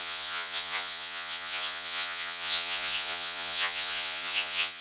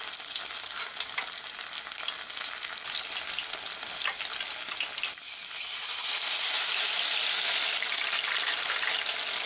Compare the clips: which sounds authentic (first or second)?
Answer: second